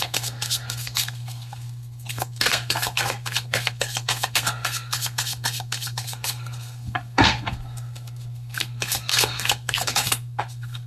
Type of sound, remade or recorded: remade